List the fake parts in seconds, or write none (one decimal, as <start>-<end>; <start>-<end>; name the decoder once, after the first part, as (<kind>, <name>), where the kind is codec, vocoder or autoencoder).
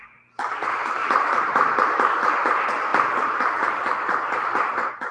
1.0-1.8 (vocoder, BigVGAN v2)